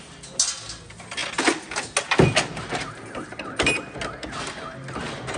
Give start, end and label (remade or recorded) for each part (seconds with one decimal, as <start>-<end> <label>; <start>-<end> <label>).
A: 0.0-5.4 recorded